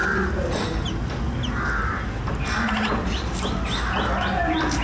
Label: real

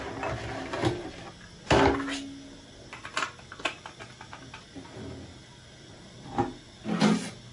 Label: real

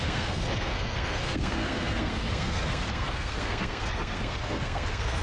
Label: fake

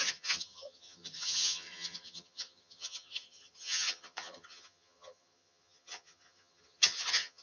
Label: fake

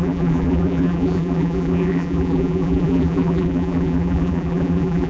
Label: fake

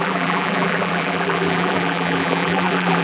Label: fake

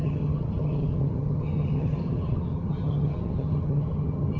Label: fake